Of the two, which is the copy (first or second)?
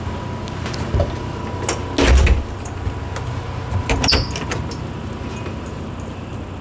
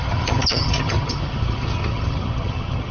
second